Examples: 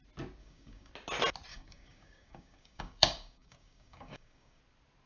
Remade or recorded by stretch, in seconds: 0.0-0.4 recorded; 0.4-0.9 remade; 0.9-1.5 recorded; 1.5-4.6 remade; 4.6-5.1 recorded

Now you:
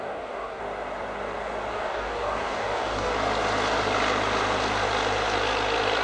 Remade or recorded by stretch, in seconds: 0.0-0.6 remade; 0.6-1.7 recorded; 1.7-3.1 remade; 3.1-6.0 recorded